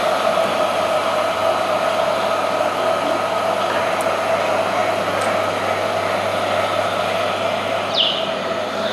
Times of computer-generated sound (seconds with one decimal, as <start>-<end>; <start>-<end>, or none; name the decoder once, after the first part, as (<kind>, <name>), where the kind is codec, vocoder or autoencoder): none